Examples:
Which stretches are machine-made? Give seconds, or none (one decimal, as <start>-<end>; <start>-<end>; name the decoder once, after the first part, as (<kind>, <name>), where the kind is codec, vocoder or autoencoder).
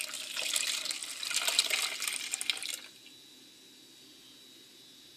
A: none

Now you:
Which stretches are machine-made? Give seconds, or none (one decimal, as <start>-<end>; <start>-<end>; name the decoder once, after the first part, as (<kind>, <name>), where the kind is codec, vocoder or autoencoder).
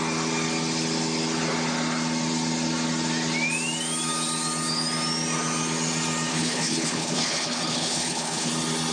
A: 6.3-8.5 (codec, HILCodec)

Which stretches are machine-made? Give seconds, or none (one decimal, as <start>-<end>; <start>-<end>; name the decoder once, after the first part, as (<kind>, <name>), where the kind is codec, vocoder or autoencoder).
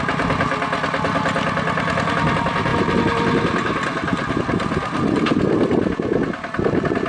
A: none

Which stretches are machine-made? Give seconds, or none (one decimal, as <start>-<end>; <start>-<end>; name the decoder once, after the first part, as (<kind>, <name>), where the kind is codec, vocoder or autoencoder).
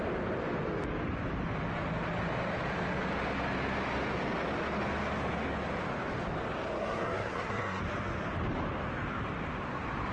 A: 6.8-7.8 (codec, SNAC)